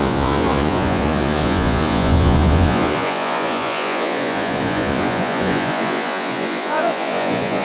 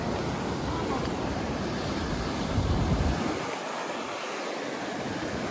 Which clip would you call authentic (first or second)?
second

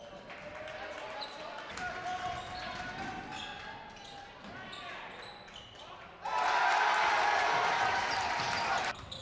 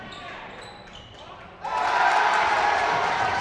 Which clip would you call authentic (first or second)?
first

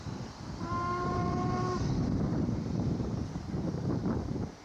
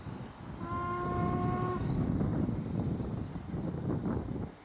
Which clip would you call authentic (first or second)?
second